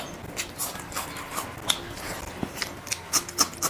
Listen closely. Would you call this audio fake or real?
real